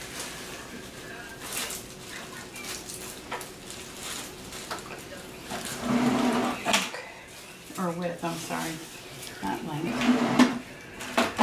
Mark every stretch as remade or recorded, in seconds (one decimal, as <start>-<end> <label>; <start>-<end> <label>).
0.0-11.4 recorded